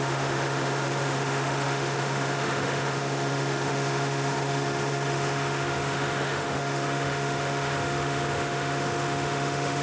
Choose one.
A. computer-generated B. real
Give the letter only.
A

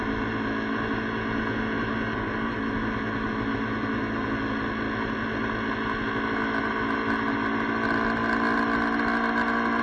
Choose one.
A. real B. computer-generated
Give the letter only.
A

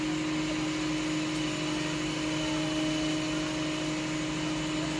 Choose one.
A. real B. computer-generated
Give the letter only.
A